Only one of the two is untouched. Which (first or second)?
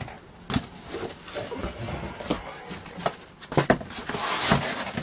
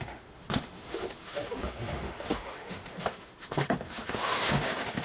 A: first